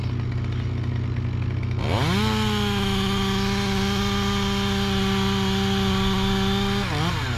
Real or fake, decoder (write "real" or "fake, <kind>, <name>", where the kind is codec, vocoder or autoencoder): real